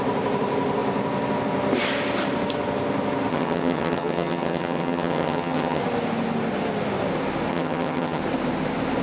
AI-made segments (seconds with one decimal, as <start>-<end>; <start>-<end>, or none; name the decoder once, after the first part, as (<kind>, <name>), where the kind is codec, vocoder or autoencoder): 3.3-5.8 (vocoder, HiFi-GAN); 7.5-8.2